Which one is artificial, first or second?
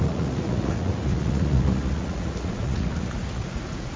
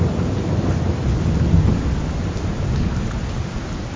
first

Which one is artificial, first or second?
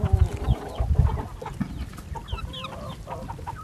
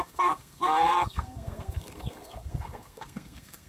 second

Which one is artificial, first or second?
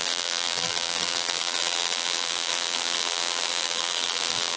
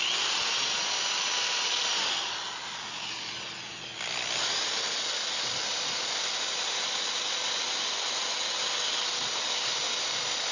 first